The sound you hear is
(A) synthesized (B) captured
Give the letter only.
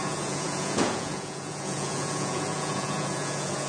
A